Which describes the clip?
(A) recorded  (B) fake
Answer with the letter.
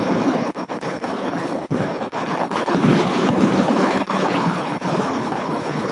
B